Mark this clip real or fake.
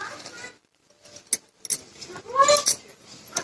real